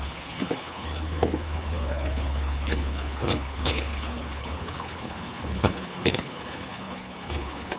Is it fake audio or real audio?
fake